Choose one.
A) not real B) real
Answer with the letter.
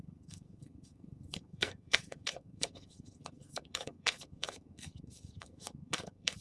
A